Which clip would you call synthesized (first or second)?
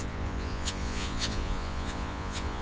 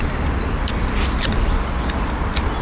first